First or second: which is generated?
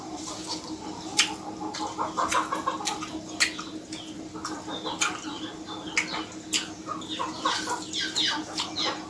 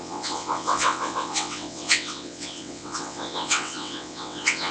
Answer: second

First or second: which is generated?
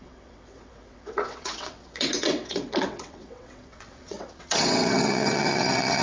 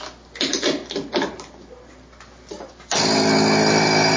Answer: first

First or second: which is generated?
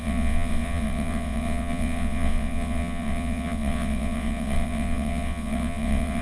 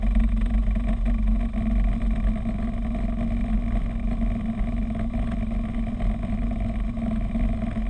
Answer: first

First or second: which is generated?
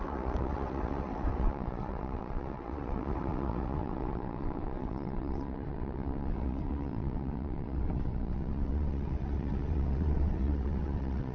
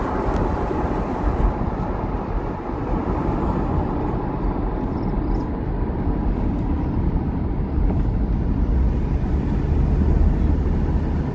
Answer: first